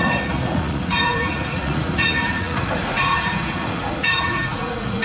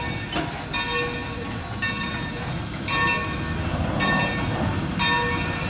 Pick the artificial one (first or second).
first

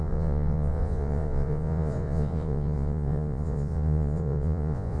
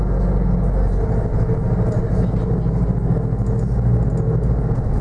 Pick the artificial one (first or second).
first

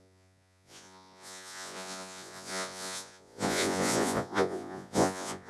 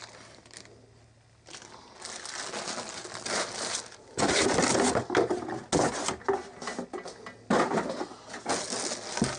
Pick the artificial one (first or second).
first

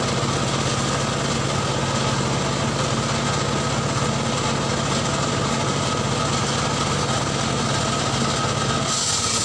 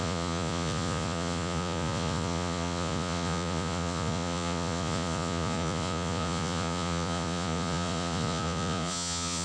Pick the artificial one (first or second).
second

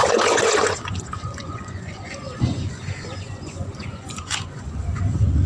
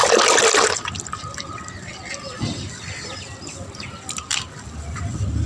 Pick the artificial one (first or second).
first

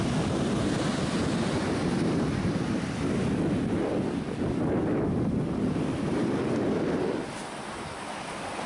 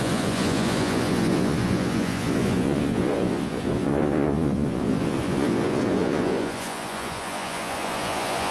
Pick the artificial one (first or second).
second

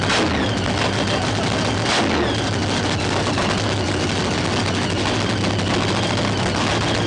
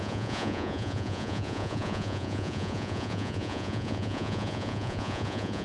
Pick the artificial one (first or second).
second